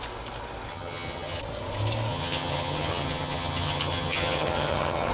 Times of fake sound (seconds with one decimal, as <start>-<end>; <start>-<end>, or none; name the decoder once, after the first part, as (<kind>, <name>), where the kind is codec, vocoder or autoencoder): 0.7-1.4 (vocoder, HiFi-GAN); 2.1-5.1